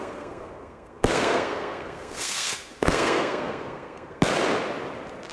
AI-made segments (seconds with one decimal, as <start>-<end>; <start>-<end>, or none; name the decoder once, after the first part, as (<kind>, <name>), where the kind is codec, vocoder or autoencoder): 0.0-4.3 (codec, SNAC)